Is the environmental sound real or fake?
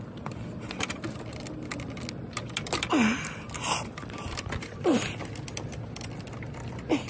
real